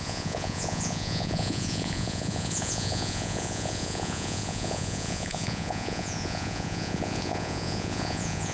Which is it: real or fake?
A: fake